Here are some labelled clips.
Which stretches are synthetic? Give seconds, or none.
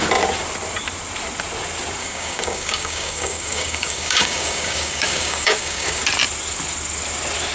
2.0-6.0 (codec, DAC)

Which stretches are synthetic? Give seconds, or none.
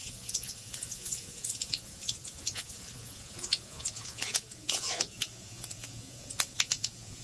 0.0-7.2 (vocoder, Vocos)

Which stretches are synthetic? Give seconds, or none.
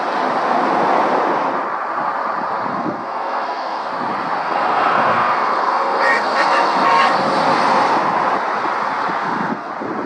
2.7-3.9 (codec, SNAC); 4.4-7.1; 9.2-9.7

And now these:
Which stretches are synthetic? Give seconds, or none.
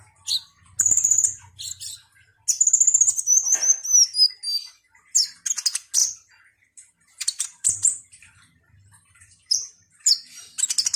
6.0-10.1 (vocoder, BigVGAN v2)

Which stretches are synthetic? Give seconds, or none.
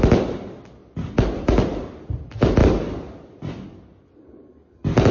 none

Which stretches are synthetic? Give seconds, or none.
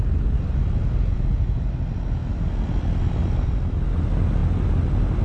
none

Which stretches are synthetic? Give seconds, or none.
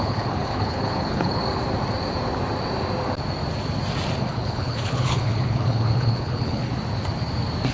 0.0-1.4 (codec, HILCodec); 4.2-6.7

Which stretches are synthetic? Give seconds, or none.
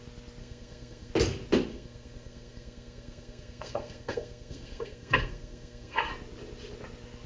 0.4-1.1 (codec, SNAC); 1.7-6.1